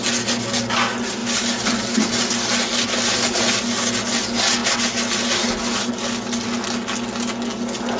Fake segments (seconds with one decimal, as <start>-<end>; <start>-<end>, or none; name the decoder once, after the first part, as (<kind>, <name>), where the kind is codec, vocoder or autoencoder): 1.2-2.3 (vocoder, BigVGAN v2); 4.6-5.9